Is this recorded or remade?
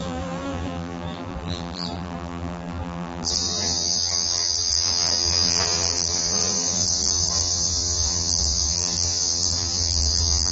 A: remade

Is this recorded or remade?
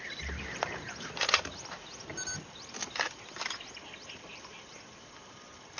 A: recorded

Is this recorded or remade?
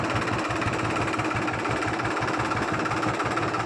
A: recorded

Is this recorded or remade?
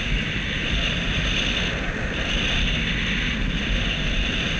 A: recorded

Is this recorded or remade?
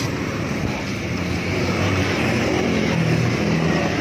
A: remade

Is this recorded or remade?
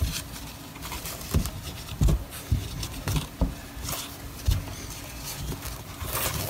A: recorded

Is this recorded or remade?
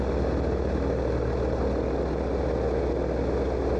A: recorded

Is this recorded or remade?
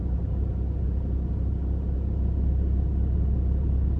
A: recorded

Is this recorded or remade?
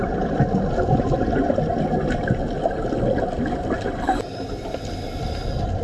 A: recorded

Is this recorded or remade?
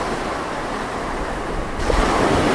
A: remade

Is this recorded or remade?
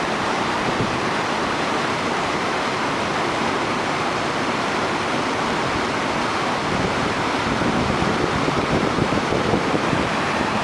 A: remade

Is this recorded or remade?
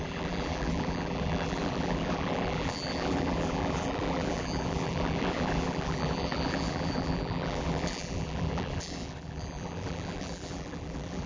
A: remade